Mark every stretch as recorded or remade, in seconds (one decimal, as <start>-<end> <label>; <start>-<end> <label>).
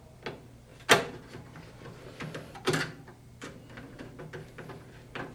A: 0.0-5.3 recorded